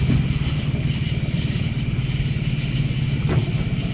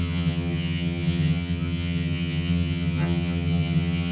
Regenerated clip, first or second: second